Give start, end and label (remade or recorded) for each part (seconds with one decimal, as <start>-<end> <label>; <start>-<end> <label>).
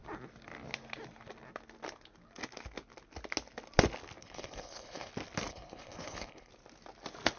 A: 0.0-4.2 recorded; 4.2-5.1 remade; 5.1-5.5 recorded; 5.5-6.5 remade; 6.5-7.4 recorded